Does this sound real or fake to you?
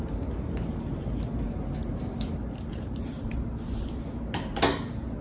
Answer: real